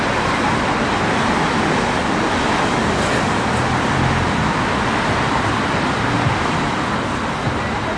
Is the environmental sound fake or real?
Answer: real